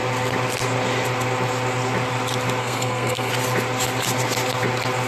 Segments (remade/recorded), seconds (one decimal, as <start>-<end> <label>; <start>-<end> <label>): 0.0-2.6 recorded; 2.6-3.3 remade; 3.3-5.1 recorded